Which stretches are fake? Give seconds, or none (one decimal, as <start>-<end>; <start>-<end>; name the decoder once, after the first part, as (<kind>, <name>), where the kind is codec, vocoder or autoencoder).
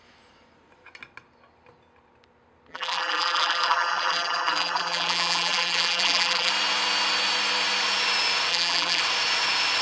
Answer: 2.7-6.5 (vocoder, BigVGAN v2); 8.5-9.0